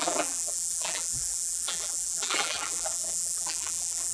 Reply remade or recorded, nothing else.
remade